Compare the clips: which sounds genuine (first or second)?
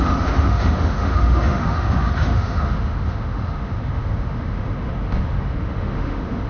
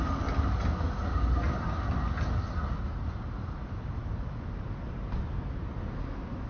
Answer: second